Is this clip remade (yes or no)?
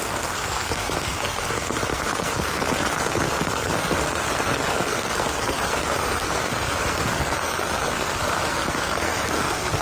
yes